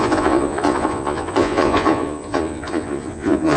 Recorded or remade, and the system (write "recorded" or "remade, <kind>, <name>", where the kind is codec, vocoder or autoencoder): remade, vocoder, Vocos